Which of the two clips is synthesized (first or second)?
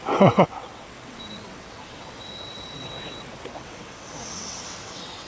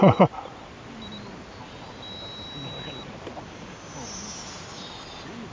first